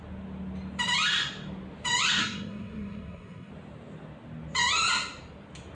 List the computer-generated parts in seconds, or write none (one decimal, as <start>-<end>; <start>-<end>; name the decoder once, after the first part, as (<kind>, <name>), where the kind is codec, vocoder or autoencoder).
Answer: 2.2-3.5 (codec, SNAC)

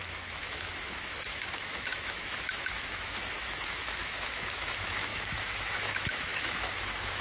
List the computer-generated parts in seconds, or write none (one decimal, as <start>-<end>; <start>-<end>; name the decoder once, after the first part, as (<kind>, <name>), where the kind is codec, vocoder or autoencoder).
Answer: 0.0-7.2 (autoencoder, DAC-VAE)

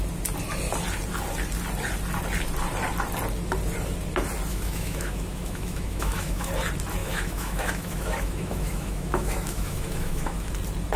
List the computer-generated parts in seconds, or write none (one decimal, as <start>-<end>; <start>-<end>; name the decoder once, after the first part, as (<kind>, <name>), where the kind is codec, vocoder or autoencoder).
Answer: 4.5-6.5 (autoencoder, DAC-VAE); 7.0-10.5

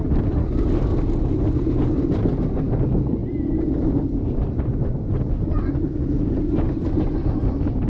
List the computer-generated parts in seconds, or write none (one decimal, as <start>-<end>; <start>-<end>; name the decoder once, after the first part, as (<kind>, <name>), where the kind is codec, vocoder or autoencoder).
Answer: 0.0-0.6 (vocoder, BigVGAN v2)

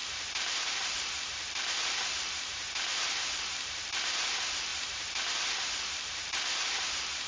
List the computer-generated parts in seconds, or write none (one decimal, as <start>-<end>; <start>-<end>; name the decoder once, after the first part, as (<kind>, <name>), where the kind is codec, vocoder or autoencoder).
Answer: 0.0-7.3 (vocoder, BigVGAN v2)

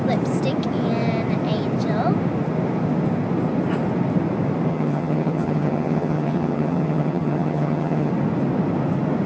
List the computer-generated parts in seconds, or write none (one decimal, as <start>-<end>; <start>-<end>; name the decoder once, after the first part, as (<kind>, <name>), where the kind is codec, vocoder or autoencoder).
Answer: 4.7-8.1 (vocoder, HiFi-GAN)